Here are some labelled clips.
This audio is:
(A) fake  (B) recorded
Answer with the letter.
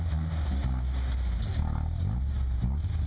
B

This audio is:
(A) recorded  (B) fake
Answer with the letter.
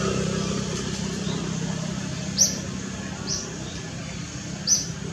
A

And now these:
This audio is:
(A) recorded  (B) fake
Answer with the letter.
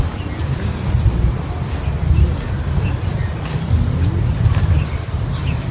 A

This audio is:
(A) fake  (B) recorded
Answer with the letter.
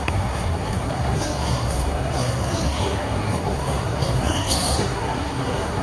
A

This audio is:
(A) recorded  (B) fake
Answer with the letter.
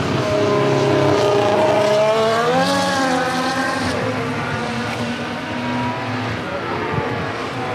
A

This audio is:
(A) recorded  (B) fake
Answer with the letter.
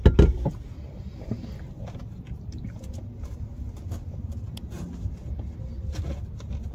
A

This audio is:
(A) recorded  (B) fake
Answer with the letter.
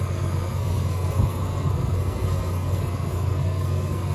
B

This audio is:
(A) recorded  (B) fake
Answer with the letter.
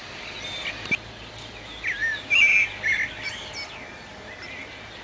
A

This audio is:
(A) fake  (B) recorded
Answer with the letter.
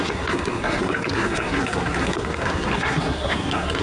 A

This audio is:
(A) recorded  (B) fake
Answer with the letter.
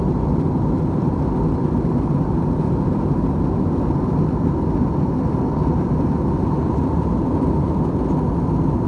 A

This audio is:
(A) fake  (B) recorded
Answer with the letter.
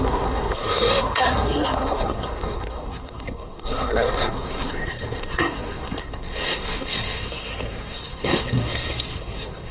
A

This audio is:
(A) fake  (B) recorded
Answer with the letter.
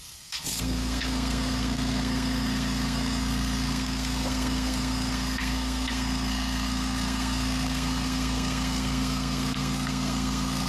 A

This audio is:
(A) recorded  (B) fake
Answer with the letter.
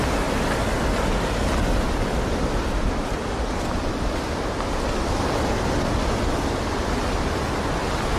A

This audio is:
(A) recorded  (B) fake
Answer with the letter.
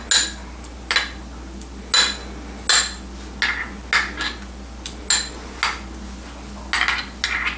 A